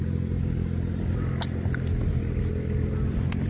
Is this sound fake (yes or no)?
no